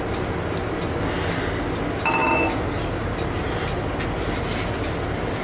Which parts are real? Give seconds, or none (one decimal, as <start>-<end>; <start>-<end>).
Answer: 0.0-5.4